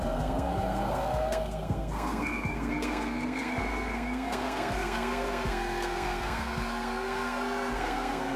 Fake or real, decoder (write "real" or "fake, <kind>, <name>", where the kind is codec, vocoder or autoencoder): fake, codec, SNAC